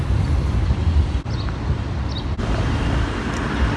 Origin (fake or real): real